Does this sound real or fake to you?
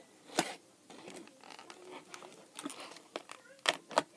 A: real